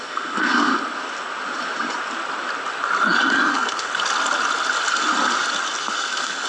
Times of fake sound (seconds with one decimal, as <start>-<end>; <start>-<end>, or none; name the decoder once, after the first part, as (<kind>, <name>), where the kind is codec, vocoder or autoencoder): 0.0-0.7 (codec, SNAC); 3.5-3.9; 5.8-6.5